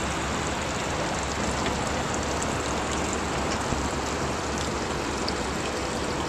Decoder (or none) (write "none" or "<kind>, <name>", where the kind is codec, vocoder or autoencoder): none